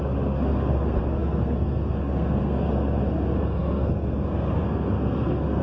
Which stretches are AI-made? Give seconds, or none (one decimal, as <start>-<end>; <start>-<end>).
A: 0.0-5.6